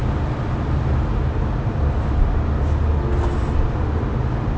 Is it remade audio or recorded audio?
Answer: recorded